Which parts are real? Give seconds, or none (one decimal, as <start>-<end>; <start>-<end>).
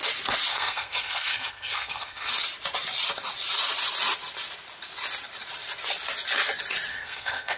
0.0-0.5; 2.3-6.9